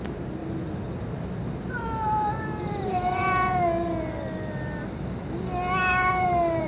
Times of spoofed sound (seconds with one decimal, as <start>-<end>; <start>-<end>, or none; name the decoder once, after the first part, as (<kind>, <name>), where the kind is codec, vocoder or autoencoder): 0.0-0.4 (vocoder, BigVGAN v2); 1.7-3.2; 5.8-6.7

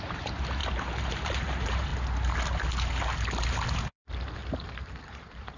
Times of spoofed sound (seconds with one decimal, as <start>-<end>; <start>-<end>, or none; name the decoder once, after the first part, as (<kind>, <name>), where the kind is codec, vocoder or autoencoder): 0.0-1.9 (vocoder, BigVGAN v2); 3.7-4.4; 5.1-5.6